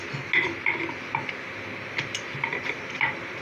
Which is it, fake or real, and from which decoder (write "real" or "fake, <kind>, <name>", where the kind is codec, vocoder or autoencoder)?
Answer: real